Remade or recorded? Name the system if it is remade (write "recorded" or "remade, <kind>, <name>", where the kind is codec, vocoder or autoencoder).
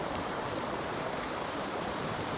remade, vocoder, BigVGAN v2